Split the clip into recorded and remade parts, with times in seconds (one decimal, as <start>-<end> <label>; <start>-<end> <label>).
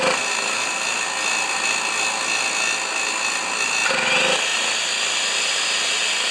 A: 0.0-6.3 recorded